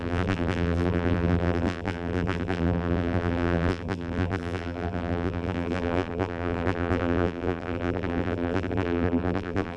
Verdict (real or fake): fake